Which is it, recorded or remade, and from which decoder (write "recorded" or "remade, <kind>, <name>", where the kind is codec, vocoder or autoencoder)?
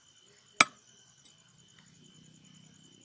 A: recorded